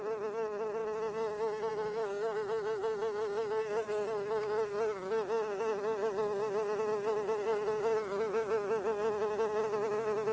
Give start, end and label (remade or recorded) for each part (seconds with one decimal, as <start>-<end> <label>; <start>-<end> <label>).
0.0-10.3 recorded